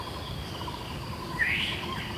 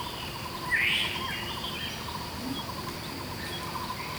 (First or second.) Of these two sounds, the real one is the second